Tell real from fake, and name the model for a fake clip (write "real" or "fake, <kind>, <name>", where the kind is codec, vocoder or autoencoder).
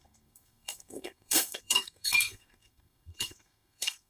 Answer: fake, codec, SNAC